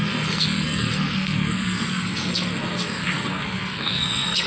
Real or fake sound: fake